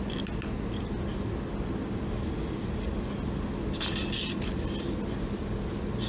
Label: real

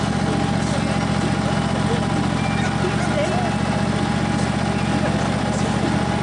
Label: real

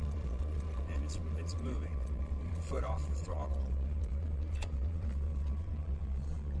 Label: fake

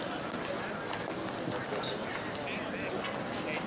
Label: real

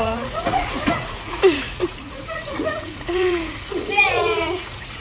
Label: fake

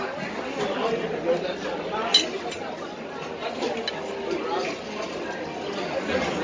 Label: real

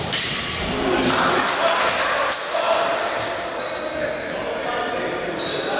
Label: real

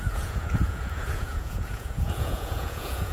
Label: fake